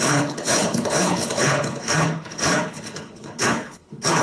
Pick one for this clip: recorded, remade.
remade